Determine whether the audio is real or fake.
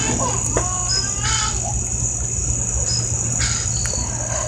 real